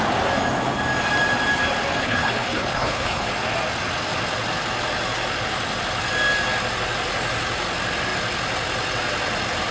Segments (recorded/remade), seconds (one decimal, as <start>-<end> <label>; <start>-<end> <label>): 0.0-2.0 recorded; 2.0-3.3 remade; 3.3-9.7 recorded